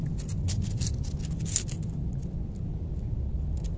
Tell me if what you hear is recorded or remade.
recorded